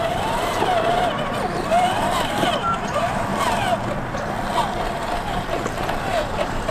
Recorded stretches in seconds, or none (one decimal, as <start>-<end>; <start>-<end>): 3.3-5.1